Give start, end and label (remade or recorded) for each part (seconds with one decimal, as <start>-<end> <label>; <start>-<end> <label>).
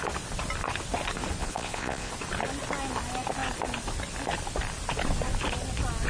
0.0-1.4 recorded; 1.4-2.1 remade; 2.1-6.1 recorded